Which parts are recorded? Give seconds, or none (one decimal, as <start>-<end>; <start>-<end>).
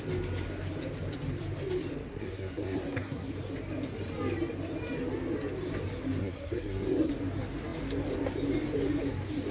0.0-2.1; 3.3-6.2; 7.1-9.5